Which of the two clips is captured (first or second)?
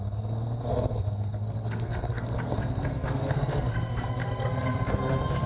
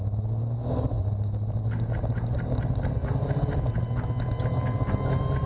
second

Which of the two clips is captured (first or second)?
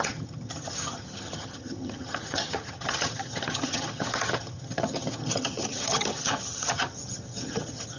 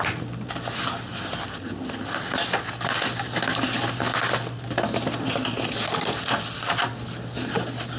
second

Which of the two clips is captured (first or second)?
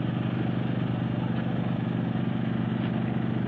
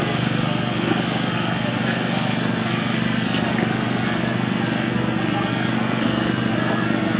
first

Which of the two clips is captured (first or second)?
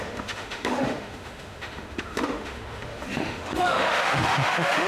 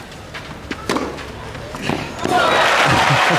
second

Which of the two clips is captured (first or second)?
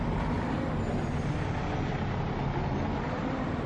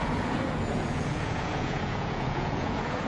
first